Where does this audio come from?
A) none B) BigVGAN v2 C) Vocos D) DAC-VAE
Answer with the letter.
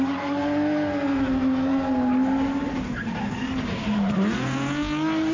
A